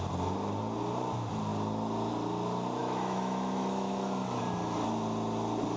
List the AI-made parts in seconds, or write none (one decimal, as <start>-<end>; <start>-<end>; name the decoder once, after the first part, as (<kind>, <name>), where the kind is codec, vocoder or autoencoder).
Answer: 2.8-4.4 (autoencoder, DAC-VAE)